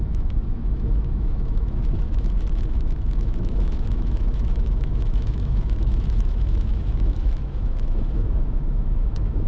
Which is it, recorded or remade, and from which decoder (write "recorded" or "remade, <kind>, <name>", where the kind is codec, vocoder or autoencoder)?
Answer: remade, autoencoder, DAC-VAE